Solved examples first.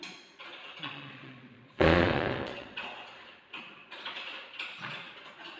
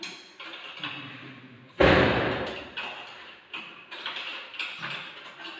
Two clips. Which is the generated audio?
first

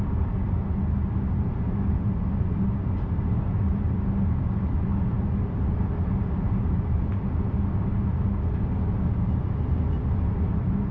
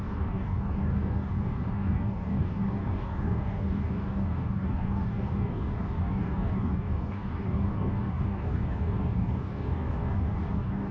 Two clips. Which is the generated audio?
second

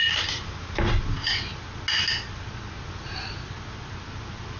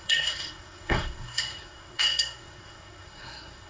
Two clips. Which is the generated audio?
second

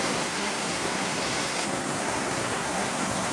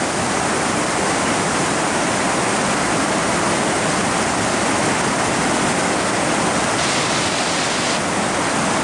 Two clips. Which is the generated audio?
first